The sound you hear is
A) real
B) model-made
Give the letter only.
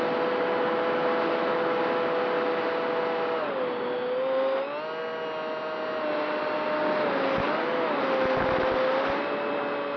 A